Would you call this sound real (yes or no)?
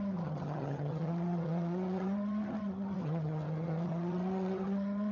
no